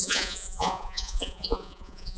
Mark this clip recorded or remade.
remade